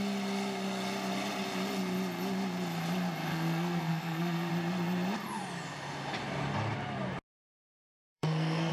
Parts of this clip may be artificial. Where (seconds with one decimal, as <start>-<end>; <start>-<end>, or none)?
3.3-4.5; 7.5-8.7